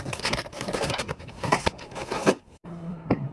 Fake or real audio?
fake